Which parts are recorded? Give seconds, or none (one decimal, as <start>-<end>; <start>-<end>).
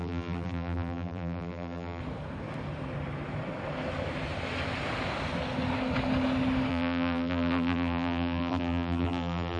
2.0-6.7